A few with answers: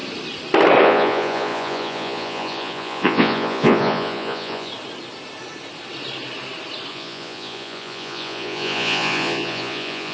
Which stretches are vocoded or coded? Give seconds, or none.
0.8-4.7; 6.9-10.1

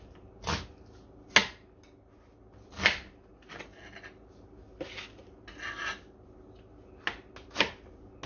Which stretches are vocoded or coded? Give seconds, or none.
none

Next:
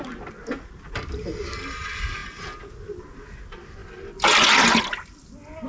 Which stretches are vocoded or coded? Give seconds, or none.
none

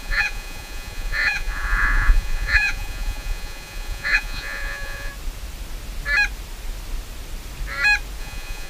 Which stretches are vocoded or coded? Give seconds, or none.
0.0-5.1; 8.2-8.7